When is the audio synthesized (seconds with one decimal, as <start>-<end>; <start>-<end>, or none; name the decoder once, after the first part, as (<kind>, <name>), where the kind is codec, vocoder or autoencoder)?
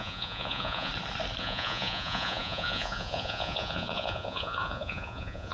0.0-0.9 (vocoder, Vocos); 1.4-5.5